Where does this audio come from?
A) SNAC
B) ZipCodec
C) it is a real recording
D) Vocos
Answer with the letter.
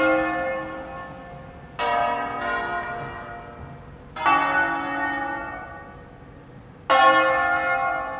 C